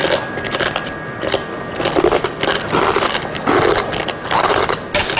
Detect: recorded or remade recorded